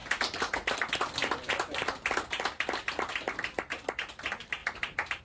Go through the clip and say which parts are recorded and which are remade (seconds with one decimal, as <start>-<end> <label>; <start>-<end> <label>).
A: 0.0-4.6 recorded; 4.6-5.2 remade